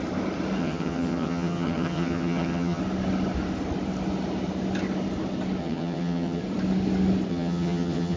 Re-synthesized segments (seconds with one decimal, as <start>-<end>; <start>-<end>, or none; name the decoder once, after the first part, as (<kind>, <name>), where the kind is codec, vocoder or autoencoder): 0.6-2.8 (vocoder, HiFi-GAN); 5.6-6.4; 7.3-8.2

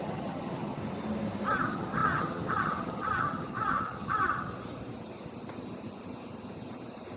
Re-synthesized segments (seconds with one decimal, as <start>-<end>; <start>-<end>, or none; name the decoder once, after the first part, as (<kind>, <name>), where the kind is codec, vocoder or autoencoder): 0.0-0.8 (vocoder, HiFi-GAN); 1.5-4.5

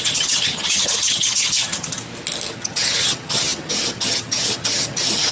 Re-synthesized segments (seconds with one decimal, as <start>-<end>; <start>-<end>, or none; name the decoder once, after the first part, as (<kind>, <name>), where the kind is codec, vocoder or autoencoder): 0.0-2.0 (vocoder, HiFi-GAN); 2.5-5.3

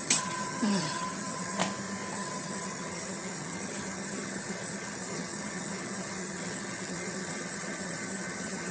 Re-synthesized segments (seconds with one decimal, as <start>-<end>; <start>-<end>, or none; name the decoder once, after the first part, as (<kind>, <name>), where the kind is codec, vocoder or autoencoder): 0.0-1.6 (vocoder, HiFi-GAN); 2.1-8.7

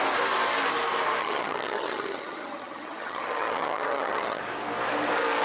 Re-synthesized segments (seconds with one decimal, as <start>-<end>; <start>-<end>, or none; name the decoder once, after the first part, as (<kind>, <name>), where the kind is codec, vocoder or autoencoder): 1.2-4.4 (vocoder, HiFi-GAN)

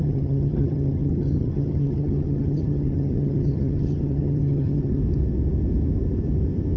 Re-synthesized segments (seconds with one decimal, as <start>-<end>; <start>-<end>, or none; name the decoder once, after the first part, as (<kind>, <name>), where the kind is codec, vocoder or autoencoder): 0.0-5.0 (vocoder, HiFi-GAN)